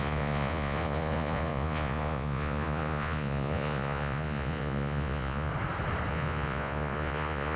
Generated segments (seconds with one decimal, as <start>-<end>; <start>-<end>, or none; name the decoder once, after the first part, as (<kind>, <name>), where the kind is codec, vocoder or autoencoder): 0.0-5.5 (vocoder, Vocos); 6.1-7.6